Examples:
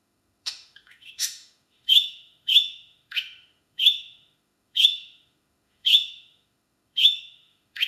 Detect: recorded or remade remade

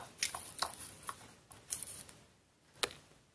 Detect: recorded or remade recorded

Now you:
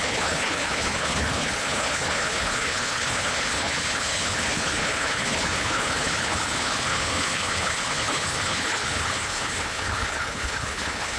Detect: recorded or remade remade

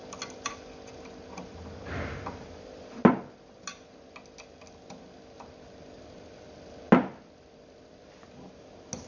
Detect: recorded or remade recorded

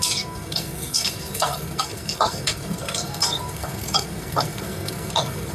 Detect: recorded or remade remade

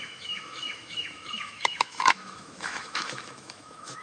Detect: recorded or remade remade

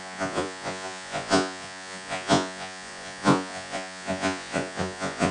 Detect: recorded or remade remade